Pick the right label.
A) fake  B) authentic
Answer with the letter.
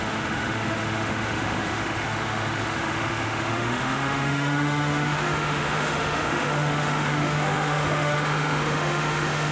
A